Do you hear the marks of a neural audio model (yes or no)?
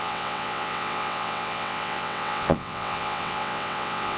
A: yes